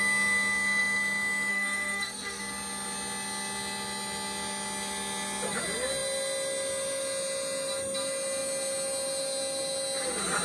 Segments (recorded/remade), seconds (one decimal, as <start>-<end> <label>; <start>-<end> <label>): 0.0-1.5 recorded; 1.5-2.4 remade; 2.4-10.4 recorded